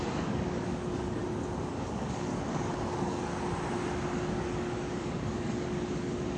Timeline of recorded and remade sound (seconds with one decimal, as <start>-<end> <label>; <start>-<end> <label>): 0.0-1.2 remade; 1.2-1.7 recorded; 1.7-3.3 remade; 3.3-4.3 recorded; 4.3-6.4 remade